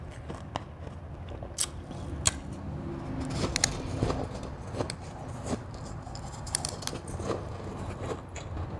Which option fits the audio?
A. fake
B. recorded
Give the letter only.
B